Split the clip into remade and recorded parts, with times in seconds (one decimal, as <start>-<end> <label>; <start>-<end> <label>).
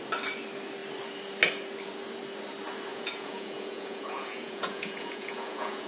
0.0-2.9 recorded; 2.9-5.9 remade